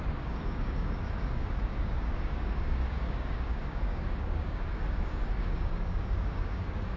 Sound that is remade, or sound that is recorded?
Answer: remade